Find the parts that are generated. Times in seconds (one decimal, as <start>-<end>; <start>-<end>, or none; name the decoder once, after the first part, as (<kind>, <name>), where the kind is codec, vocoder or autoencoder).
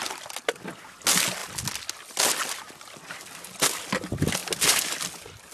none